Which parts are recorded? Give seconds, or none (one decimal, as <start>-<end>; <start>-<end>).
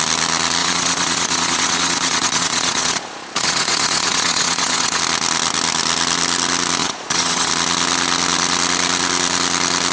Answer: 0.0-0.6; 5.0-6.8; 7.5-9.9